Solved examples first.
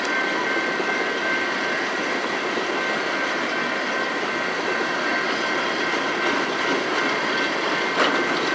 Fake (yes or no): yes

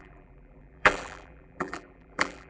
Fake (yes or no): yes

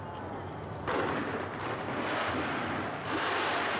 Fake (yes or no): no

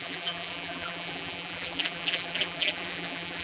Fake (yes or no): yes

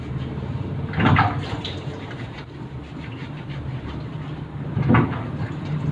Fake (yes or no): yes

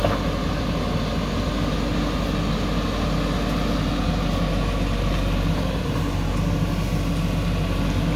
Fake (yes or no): no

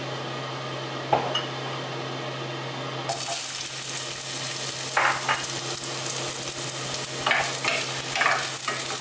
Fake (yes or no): no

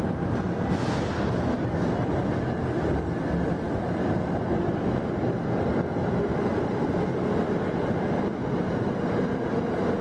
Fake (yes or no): no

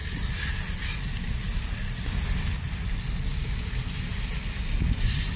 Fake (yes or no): no